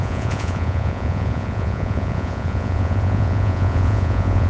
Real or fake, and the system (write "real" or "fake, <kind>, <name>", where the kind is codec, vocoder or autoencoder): fake, vocoder, Vocos